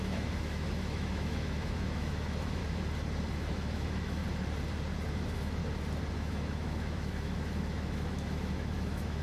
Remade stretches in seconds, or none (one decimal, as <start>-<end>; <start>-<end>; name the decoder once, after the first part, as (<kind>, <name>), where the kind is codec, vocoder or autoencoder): 0.0-2.6 (autoencoder, DAC-VAE); 3.3-4.2; 5.1-5.6; 6.1-9.2